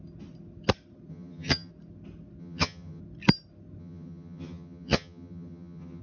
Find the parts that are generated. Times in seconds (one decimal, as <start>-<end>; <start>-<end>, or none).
1.1-1.7; 2.4-3.0; 3.8-6.0